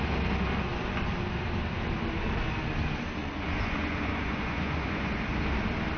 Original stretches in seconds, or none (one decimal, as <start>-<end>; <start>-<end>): 0.0-3.2; 5.2-6.0